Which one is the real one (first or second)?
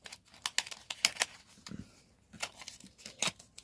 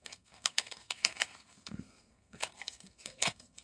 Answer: first